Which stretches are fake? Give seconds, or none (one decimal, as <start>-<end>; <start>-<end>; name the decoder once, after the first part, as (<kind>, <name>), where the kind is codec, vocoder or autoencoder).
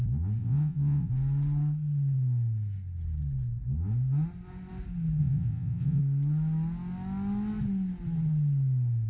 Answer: 0.4-1.1 (vocoder, WaveNeXt); 5.2-6.0